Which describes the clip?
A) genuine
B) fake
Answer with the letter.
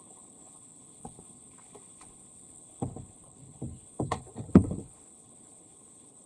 B